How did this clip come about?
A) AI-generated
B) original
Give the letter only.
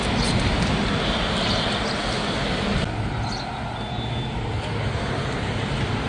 B